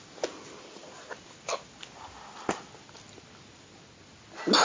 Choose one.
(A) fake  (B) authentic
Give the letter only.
B